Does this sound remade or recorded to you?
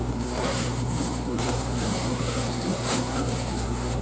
remade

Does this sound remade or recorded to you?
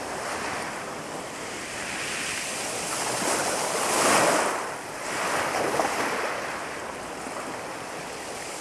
recorded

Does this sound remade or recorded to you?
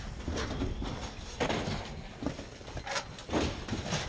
recorded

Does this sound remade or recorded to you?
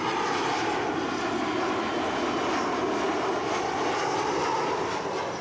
recorded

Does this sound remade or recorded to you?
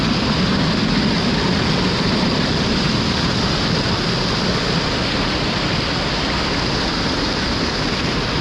recorded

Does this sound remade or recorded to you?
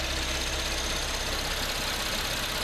recorded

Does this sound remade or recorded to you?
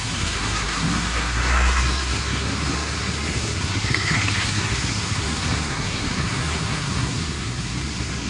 remade